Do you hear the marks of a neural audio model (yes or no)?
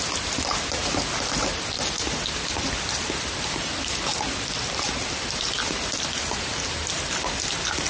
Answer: no